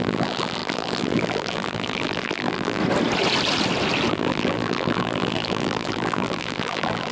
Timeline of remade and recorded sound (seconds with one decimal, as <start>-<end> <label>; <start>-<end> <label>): 0.0-2.8 remade; 2.8-4.1 recorded; 4.1-7.1 remade